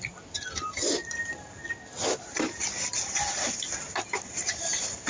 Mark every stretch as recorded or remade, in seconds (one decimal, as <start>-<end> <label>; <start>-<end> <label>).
0.0-5.1 recorded